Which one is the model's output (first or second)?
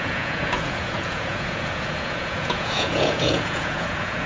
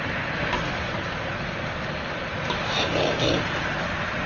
first